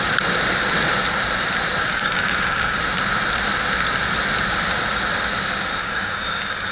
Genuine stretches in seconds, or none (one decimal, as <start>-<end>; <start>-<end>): 0.0-1.9; 2.8-5.8